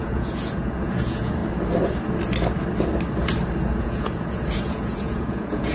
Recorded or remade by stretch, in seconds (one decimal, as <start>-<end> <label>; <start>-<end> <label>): 0.0-1.4 remade; 1.4-3.8 recorded; 3.8-5.7 remade